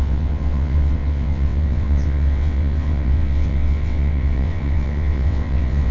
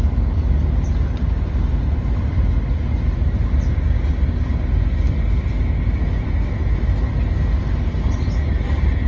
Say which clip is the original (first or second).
second